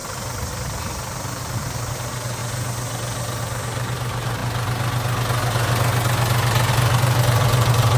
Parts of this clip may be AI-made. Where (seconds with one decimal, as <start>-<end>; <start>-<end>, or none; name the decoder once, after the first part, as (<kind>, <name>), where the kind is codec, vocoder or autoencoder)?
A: 0.5-2.4 (vocoder, BigVGAN v2); 3.4-4.4; 6.7-8.0